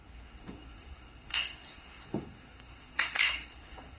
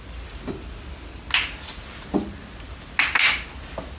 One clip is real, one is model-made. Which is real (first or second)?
second